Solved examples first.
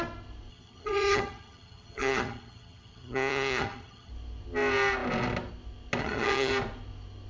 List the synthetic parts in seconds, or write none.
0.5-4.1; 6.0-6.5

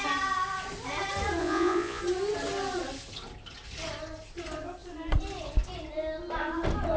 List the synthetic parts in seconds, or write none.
1.4-2.0

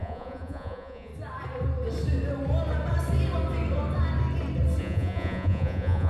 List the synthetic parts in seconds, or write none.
0.0-1.1; 4.8-6.1

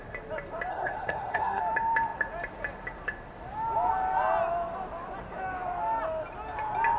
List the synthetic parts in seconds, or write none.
0.7-1.6

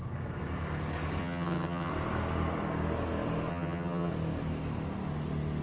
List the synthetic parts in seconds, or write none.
1.2-1.9; 3.5-4.1

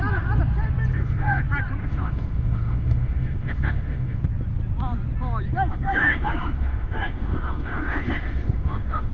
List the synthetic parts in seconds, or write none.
0.9-1.4; 1.8-4.2; 5.7-9.1

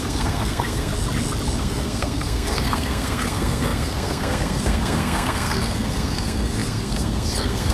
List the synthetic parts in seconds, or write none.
0.0-0.9; 1.6-7.7